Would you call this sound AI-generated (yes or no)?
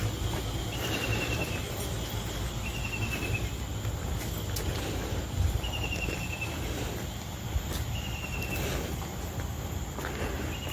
no